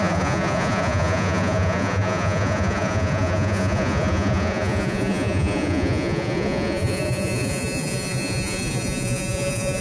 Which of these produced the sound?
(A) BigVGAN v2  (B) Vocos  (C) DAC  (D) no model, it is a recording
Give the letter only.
B